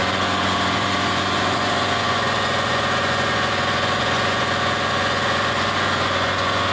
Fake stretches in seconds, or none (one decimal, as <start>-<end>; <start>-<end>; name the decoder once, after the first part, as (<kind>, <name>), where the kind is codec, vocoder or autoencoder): 0.0-6.7 (vocoder, Vocos)